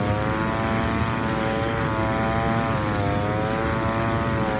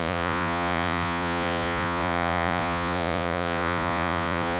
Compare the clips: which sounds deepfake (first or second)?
second